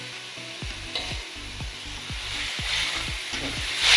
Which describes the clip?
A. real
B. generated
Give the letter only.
A